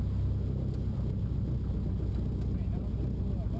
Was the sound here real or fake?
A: real